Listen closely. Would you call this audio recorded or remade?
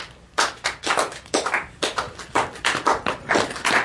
remade